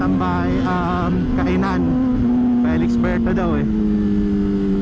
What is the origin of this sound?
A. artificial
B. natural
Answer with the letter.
B